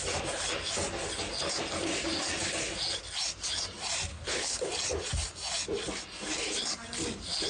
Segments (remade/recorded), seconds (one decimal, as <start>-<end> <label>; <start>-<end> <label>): 0.0-4.1 recorded; 4.1-4.6 remade; 4.6-7.5 recorded